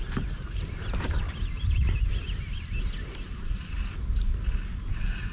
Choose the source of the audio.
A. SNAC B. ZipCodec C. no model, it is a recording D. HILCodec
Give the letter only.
C